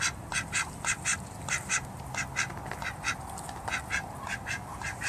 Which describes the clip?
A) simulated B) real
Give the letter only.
B